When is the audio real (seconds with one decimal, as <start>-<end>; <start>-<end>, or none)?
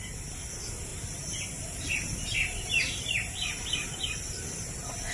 0.0-0.9; 4.0-5.1